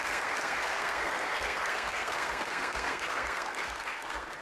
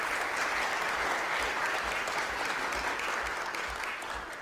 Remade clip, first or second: first